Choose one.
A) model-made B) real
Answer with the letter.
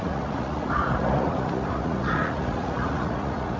A